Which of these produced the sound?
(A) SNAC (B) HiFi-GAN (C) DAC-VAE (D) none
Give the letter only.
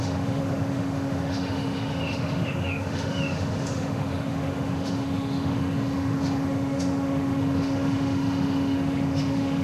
C